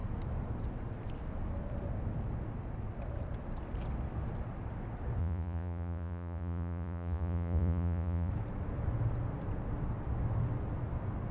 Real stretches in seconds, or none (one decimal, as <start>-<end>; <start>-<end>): 0.0-5.2; 8.3-11.3